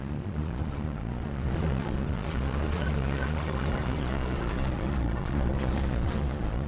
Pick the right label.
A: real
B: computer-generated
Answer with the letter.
B